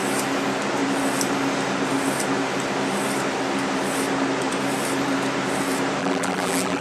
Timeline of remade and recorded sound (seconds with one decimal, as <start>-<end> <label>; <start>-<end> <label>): 0.0-6.0 recorded; 6.0-6.8 remade